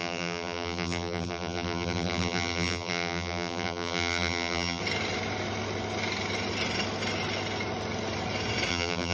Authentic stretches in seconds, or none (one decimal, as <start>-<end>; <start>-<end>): 4.8-8.7